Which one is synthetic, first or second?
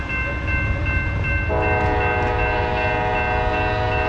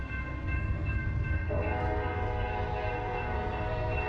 second